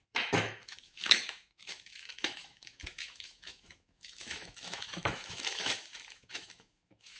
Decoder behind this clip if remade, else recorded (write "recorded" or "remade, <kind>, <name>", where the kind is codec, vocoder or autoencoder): remade, autoencoder, DAC-VAE